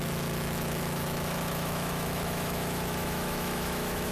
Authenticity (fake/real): fake